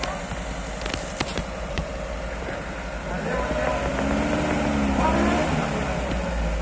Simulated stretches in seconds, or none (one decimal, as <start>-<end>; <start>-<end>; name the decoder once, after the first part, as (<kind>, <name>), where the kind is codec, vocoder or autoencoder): 1.3-1.9 (vocoder, Vocos)